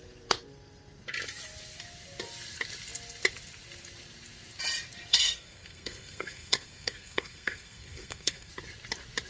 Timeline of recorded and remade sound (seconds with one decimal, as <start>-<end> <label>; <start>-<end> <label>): 0.0-5.1 recorded; 5.1-8.5 remade; 8.5-9.3 recorded